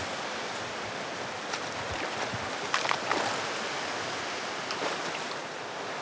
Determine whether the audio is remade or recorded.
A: recorded